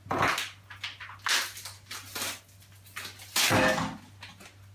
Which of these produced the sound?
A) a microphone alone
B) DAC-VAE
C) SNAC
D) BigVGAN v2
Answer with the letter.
A